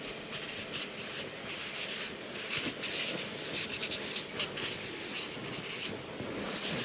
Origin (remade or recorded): recorded